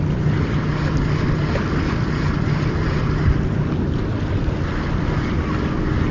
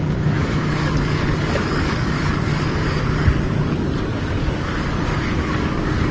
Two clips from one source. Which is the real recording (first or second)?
first